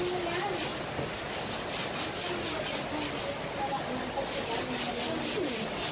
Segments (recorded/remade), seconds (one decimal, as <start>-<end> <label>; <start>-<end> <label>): 0.0-5.9 recorded